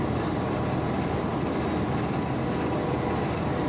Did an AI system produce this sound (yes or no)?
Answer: no